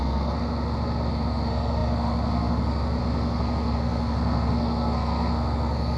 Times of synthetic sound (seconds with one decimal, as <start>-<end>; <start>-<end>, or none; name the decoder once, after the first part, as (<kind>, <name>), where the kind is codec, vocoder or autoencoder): 0.0-6.0 (codec, SNAC)